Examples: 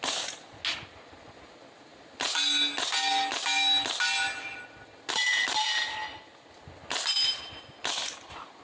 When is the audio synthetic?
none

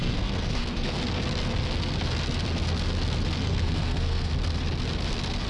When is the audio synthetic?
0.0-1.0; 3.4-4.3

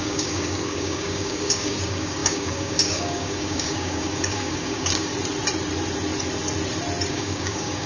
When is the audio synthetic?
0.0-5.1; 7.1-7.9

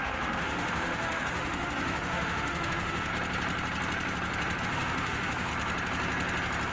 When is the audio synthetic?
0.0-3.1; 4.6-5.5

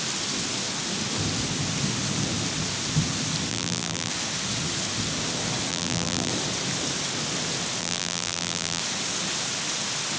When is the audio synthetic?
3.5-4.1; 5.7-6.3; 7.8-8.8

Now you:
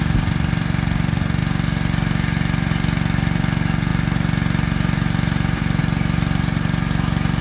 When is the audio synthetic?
0.0-1.4; 2.7-7.4

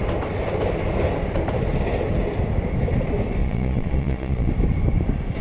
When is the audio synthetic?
3.4-4.5